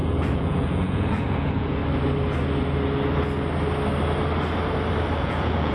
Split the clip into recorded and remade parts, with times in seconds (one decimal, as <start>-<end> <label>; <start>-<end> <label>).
0.0-1.8 remade; 1.8-5.2 recorded; 5.2-5.7 remade